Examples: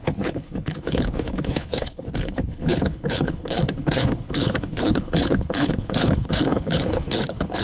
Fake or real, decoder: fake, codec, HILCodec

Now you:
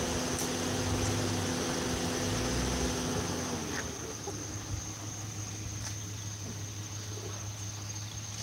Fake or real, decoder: real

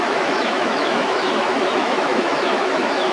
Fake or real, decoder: fake, autoencoder, DAC-VAE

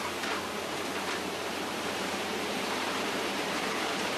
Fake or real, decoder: fake, vocoder, BigVGAN v2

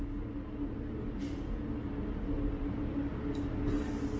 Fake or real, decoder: real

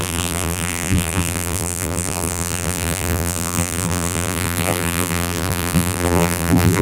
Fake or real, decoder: fake, vocoder, BigVGAN v2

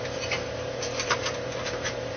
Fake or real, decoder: fake, vocoder, BigVGAN v2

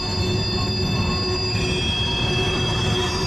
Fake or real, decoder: real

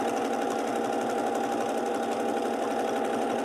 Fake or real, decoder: real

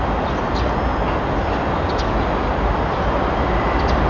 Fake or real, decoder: real